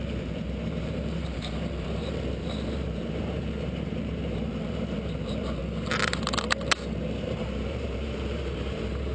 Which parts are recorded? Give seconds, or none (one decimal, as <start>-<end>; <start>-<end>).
5.6-7.0